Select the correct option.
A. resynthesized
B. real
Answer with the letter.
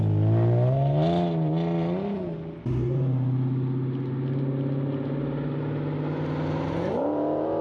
B